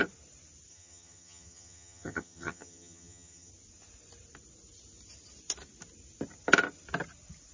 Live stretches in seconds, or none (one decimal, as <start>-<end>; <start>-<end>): 0.0-0.7; 3.5-7.5